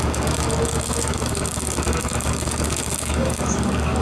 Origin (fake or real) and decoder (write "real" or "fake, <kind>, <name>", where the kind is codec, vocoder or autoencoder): fake, codec, DAC